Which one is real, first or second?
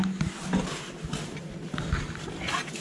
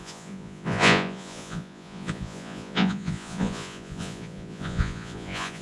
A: first